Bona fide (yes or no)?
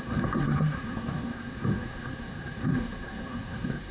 no